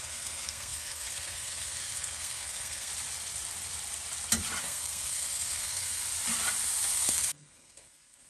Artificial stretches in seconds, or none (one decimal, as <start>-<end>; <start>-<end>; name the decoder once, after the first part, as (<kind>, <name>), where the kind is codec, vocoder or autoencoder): 0.0-2.9 (codec, SNAC); 4.6-6.0; 6.9-8.3